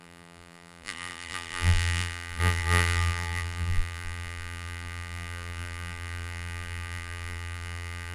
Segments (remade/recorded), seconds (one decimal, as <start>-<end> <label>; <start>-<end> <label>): 0.0-8.1 remade